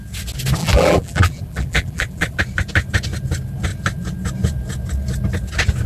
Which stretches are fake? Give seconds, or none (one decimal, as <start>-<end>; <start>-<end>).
0.6-2.4